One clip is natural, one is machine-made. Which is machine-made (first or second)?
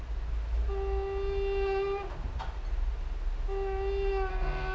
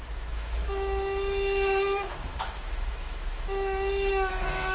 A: second